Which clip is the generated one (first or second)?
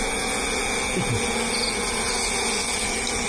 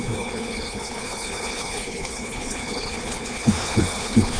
second